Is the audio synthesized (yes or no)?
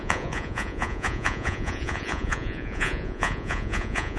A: yes